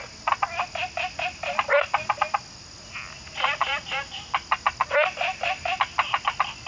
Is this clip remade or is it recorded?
recorded